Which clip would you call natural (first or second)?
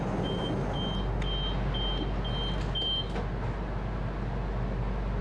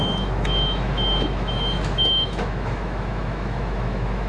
first